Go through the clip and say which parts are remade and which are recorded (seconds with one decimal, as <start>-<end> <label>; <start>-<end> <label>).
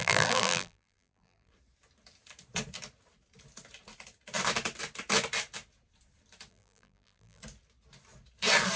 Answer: 0.0-1.5 remade; 1.5-6.5 recorded; 6.5-7.4 remade; 7.4-8.8 recorded